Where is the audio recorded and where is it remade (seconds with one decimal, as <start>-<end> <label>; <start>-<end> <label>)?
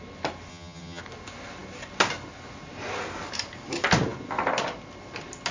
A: 0.0-0.5 recorded; 0.5-1.0 remade; 1.0-5.5 recorded